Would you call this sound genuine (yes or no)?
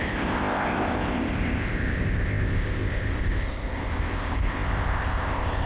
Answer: no